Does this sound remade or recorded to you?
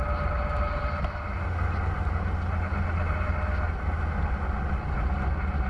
recorded